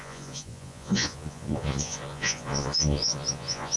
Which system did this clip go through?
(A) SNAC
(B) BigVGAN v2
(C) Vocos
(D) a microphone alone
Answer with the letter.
C